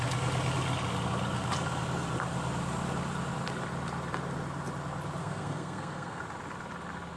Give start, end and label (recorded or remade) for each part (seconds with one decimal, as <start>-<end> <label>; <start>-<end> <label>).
0.0-5.2 recorded; 5.2-6.2 remade; 6.2-7.2 recorded